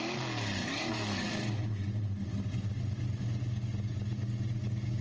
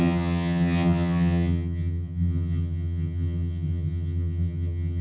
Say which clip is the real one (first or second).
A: first